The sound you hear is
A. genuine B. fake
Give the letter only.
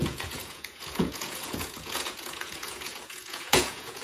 B